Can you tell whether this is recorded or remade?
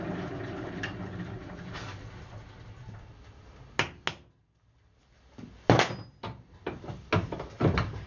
recorded